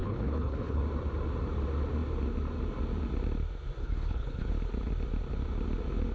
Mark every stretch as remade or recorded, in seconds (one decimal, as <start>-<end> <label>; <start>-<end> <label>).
0.0-0.8 remade; 0.8-3.8 recorded; 3.8-4.5 remade; 4.5-6.1 recorded